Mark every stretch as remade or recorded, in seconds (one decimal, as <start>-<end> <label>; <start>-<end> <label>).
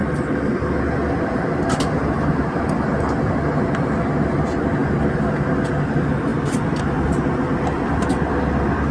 0.0-8.9 recorded